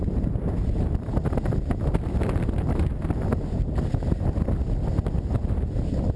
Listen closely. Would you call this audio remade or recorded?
recorded